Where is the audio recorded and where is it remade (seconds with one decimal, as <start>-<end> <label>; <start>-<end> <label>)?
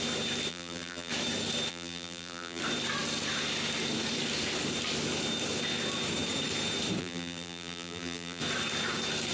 0.0-0.5 recorded; 0.5-1.1 remade; 1.1-1.7 recorded; 1.7-2.6 remade; 2.6-7.0 recorded; 7.0-8.4 remade; 8.4-9.3 recorded